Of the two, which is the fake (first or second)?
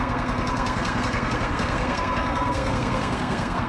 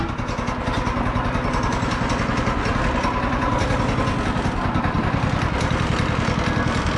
first